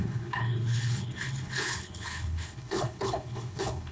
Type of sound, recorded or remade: remade